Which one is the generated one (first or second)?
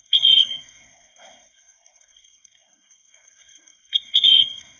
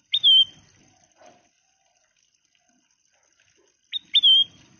first